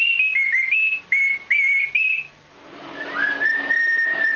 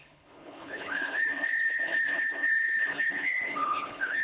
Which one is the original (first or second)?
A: first